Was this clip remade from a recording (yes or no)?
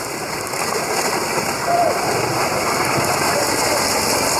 no